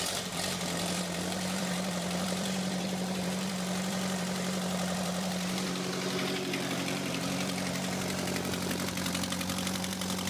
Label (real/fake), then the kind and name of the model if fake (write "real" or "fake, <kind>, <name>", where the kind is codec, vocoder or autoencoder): fake, vocoder, BigVGAN v2